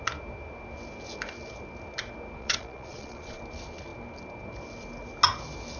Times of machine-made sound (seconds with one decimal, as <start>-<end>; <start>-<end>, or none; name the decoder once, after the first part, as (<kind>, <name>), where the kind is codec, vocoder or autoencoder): 2.4-3.4 (vocoder, Vocos)

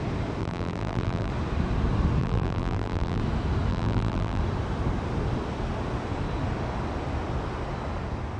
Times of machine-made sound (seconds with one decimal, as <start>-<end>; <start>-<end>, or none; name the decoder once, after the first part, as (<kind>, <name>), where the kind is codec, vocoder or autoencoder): 0.4-1.3 (vocoder, BigVGAN v2); 2.2-3.2; 3.7-4.4

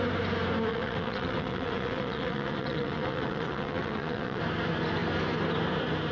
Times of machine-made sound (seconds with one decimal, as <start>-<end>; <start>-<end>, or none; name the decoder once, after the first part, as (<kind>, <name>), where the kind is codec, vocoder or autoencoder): 0.7-4.4 (vocoder, WaveNeXt)

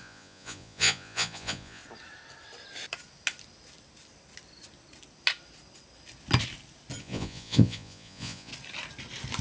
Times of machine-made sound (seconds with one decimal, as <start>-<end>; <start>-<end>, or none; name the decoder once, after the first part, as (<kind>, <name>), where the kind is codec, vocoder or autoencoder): 0.0-1.8 (vocoder, Vocos); 7.0-8.5